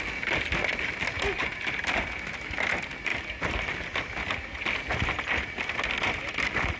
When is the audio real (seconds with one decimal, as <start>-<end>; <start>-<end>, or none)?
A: 0.0-6.8